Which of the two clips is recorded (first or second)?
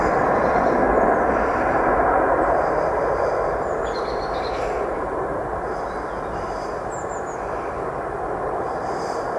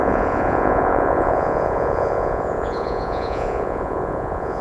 first